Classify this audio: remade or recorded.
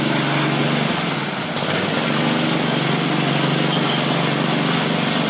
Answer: recorded